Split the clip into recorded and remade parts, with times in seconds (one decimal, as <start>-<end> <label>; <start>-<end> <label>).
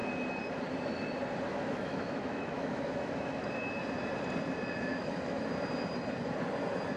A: 0.0-1.5 recorded; 1.5-3.5 remade; 3.5-4.9 recorded; 4.9-5.4 remade; 5.4-7.0 recorded